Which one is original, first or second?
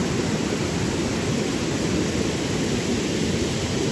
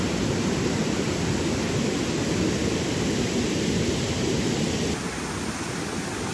second